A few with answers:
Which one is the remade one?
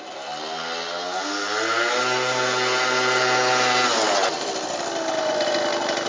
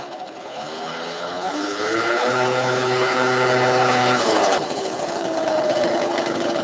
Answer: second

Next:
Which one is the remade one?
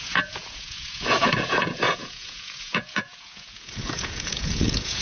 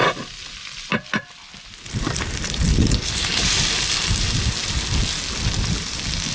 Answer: first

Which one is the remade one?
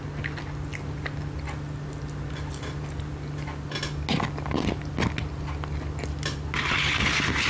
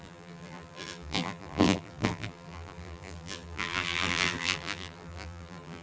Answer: second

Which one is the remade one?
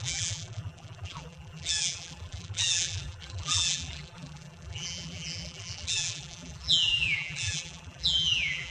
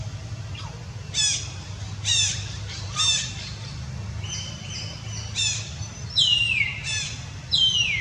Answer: first